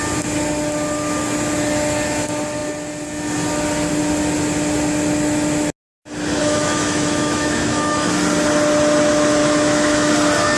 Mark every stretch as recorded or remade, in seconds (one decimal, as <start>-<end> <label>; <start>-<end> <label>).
0.0-6.4 recorded; 6.4-8.1 remade; 8.1-9.4 recorded; 9.4-10.1 remade; 10.1-10.6 recorded